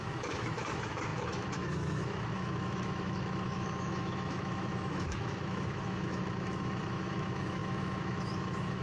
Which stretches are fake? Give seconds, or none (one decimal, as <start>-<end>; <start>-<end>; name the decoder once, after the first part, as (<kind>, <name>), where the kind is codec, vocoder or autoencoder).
0.0-8.8 (autoencoder, DAC-VAE)